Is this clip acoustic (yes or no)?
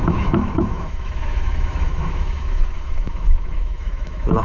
no